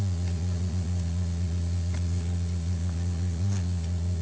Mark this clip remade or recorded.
remade